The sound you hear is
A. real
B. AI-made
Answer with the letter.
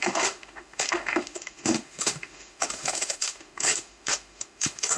B